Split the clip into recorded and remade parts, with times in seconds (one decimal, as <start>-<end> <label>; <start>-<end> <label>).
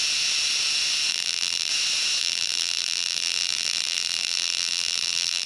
0.0-1.1 recorded; 1.1-1.7 remade; 1.7-2.2 recorded; 2.2-5.5 remade